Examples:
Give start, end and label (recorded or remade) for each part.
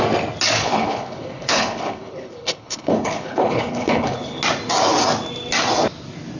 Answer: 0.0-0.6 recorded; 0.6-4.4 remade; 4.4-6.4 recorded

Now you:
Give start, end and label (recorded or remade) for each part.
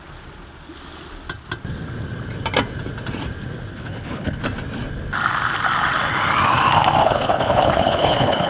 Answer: 0.0-3.7 recorded; 3.7-4.4 remade; 4.4-7.0 recorded; 7.0-8.5 remade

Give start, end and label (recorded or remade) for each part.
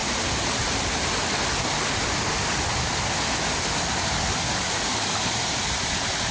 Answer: 0.0-6.3 recorded